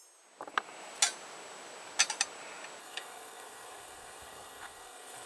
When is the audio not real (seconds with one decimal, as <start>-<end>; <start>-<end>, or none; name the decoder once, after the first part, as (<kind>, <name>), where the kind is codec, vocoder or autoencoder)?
2.8-5.3 (codec, SNAC)